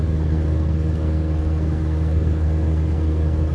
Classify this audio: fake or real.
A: fake